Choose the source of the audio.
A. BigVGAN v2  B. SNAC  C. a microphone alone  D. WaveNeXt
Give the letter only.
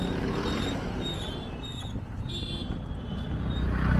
C